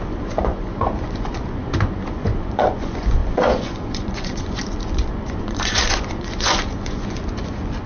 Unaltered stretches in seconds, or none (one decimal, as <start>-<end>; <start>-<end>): none